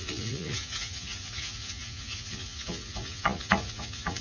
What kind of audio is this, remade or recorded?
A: remade